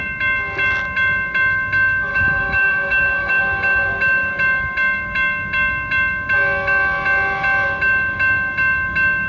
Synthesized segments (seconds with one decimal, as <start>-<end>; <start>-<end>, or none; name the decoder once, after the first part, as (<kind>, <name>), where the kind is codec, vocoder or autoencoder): 2.1-3.4 (autoencoder, DAC-VAE)